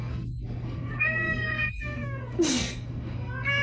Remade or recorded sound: remade